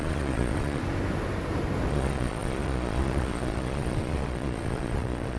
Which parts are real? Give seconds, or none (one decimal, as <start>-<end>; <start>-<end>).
0.8-1.9

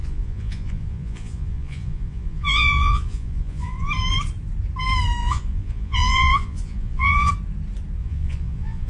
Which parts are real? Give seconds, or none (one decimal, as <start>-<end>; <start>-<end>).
3.9-5.2; 7.3-8.0

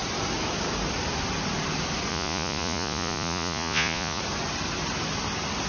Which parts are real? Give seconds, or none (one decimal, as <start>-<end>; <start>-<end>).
0.0-2.1; 4.2-5.7